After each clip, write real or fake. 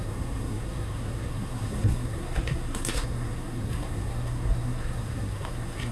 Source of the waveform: fake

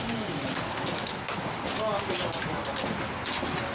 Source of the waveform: real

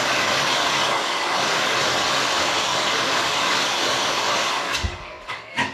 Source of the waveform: fake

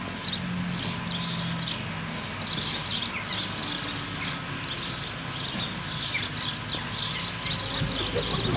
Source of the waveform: real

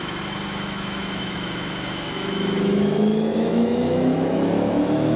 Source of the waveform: fake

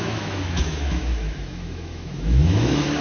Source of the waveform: fake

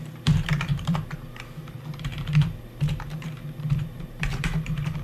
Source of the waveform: fake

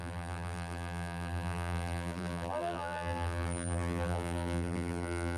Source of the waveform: fake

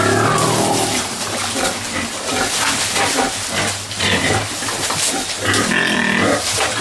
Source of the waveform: real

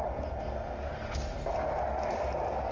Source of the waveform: real